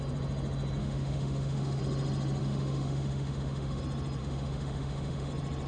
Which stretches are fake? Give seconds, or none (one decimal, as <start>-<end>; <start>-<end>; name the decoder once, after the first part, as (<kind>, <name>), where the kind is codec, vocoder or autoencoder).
0.8-1.8 (autoencoder, DAC-VAE); 2.4-3.8; 4.2-5.3